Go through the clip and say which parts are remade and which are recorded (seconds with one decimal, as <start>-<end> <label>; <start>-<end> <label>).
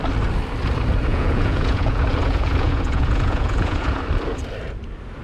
0.0-1.1 recorded; 1.1-4.0 remade; 4.0-5.2 recorded